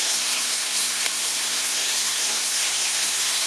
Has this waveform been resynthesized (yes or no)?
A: yes